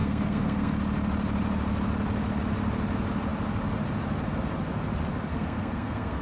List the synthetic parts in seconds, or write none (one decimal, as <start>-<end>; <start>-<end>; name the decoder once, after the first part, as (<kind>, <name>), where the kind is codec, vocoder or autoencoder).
0.0-0.8 (codec, SNAC); 5.3-6.2